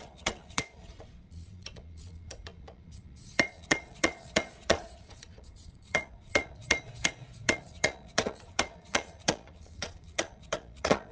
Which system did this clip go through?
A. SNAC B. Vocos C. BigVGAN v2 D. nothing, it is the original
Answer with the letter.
B